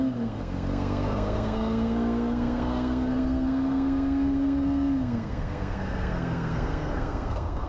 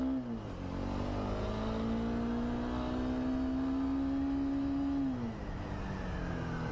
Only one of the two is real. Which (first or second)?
second